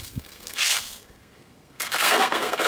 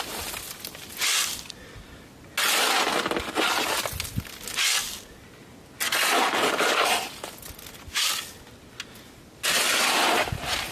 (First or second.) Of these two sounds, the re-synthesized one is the first